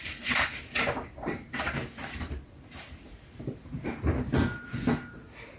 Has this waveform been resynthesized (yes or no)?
no